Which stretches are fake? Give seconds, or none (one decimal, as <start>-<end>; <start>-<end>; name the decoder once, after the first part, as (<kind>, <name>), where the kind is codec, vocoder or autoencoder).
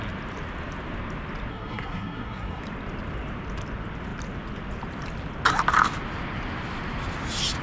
1.5-2.6 (codec, SNAC)